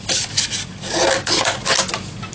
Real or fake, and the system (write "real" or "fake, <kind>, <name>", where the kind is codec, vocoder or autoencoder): real